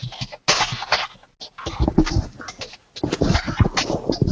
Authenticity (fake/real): real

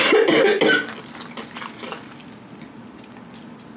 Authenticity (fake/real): real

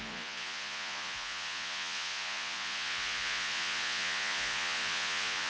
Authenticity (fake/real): fake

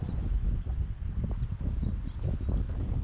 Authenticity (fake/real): real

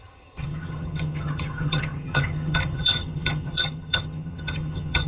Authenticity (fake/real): fake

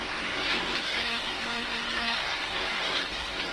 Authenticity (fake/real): fake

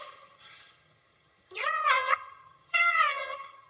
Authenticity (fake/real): fake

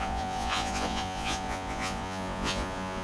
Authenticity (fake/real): fake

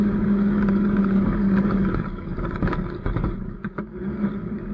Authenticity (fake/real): fake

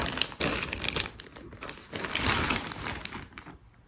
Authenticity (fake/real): real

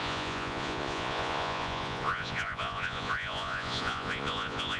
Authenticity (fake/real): fake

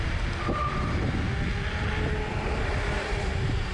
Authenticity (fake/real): fake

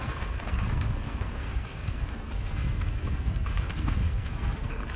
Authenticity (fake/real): fake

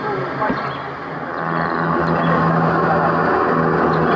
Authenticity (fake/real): real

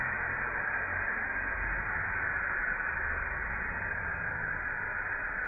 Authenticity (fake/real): real